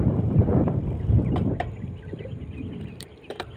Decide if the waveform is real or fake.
fake